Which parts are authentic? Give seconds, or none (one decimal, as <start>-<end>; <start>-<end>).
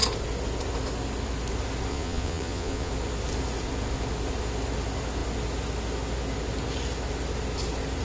0.0-1.9; 2.9-8.0